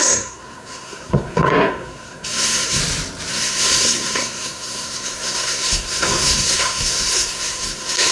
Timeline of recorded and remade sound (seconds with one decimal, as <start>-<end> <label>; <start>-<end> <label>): 0.0-2.8 remade; 2.8-3.3 recorded; 3.3-8.1 remade